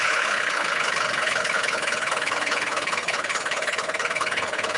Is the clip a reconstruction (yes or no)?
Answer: yes